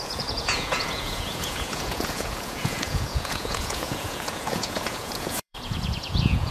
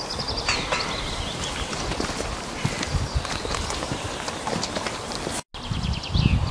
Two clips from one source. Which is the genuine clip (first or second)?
second